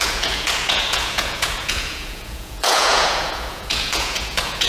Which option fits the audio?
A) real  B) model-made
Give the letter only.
B